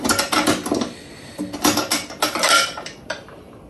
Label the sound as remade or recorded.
remade